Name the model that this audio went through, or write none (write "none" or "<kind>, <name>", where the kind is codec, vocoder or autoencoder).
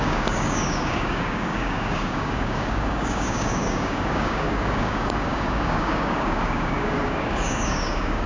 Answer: codec, DAC